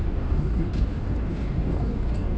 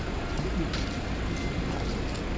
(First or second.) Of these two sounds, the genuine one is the second